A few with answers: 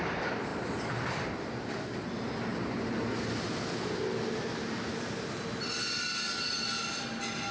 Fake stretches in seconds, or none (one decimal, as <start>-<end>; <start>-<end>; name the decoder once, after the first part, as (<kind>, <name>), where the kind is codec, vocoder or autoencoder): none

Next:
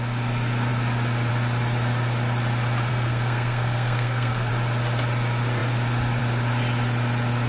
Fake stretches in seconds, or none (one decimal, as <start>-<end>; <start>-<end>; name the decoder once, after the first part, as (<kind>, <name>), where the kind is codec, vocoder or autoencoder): 2.9-4.5 (codec, SNAC)

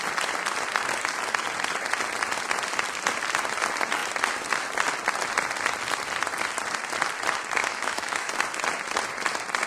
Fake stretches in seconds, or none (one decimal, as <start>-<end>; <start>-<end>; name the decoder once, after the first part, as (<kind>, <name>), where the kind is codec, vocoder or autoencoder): 7.6-8.3 (autoencoder, DAC-VAE)

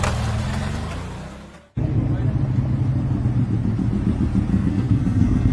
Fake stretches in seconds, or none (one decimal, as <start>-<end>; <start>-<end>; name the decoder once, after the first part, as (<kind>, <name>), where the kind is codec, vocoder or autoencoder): 4.5-5.5 (codec, SNAC)

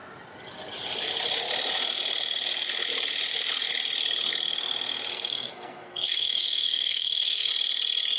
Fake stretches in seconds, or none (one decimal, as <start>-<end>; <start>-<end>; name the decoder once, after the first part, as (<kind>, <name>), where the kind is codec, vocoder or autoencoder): 5.1-7.5 (codec, SNAC)